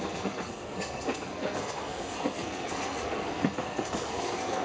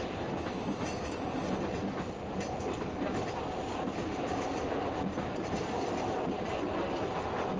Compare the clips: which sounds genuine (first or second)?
second